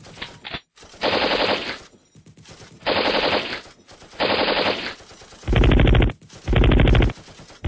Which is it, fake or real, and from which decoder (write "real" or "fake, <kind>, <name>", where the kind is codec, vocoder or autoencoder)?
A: real